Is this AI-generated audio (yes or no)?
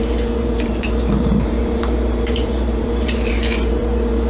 yes